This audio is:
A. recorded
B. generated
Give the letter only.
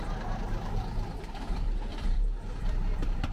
B